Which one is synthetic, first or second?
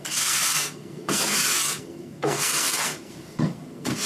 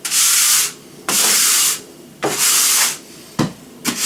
first